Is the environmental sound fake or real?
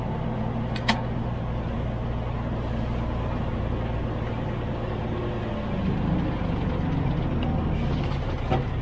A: real